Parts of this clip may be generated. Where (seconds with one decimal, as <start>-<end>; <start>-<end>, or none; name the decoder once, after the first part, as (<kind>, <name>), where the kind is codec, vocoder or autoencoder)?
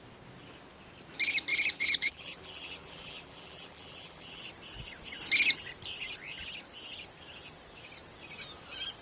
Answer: 1.5-4.4 (vocoder, BigVGAN v2)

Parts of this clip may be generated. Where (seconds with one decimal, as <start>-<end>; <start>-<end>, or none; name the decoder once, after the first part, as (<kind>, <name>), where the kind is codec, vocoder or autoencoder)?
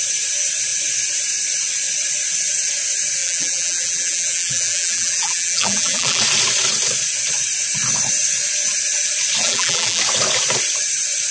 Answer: 3.2-6.2 (vocoder, BigVGAN v2); 9.4-10.0